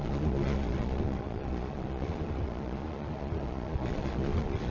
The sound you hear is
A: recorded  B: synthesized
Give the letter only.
B